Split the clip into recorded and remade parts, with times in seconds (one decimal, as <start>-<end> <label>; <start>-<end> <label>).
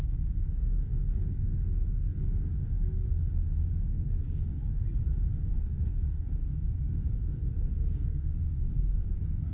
0.0-4.8 remade; 4.8-5.3 recorded; 5.3-9.5 remade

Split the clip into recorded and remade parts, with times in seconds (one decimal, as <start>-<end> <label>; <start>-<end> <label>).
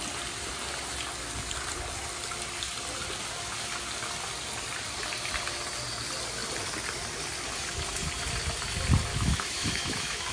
0.0-9.1 recorded; 9.1-10.3 remade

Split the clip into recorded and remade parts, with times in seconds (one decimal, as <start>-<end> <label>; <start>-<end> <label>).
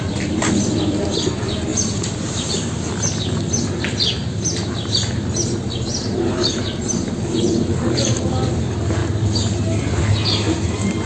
0.0-5.9 recorded; 5.9-8.5 remade; 8.5-9.0 recorded; 9.0-9.9 remade; 9.9-11.1 recorded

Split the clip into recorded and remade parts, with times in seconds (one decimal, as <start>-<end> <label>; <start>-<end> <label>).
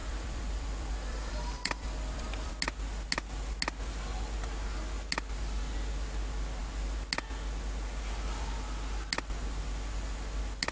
0.0-2.5 remade; 2.5-10.7 recorded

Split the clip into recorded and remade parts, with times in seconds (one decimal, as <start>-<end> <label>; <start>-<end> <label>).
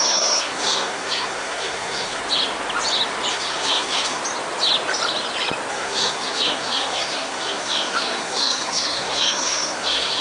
0.0-2.2 remade; 2.2-3.3 recorded; 3.3-4.2 remade; 4.2-5.7 recorded; 5.7-10.2 remade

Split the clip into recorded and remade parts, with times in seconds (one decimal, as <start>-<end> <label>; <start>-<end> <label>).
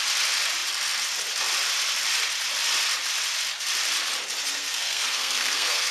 0.0-4.5 recorded; 4.5-5.9 remade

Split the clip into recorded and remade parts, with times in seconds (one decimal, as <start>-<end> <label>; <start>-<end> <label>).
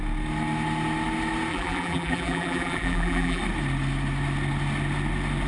0.0-1.5 recorded; 1.5-3.4 remade; 3.4-5.5 recorded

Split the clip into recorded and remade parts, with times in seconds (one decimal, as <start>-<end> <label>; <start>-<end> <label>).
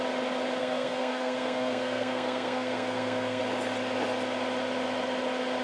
0.0-0.6 recorded; 0.6-3.4 remade; 3.4-5.6 recorded